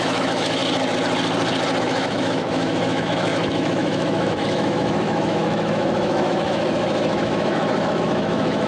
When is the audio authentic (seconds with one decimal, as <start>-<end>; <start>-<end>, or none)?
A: 0.6-1.8